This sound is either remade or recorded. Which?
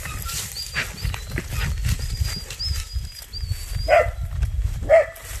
recorded